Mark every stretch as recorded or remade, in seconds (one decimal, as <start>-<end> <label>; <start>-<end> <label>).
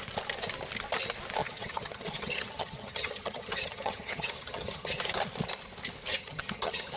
0.0-1.4 recorded; 1.4-5.0 remade; 5.0-6.1 recorded; 6.1-7.0 remade